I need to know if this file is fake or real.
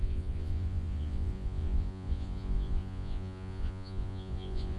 fake